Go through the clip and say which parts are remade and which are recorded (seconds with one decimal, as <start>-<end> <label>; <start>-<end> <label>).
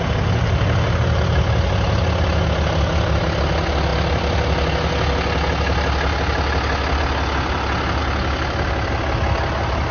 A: 0.0-9.9 recorded